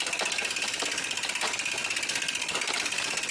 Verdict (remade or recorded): recorded